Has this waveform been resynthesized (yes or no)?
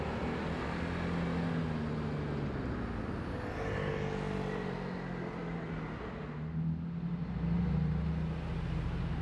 no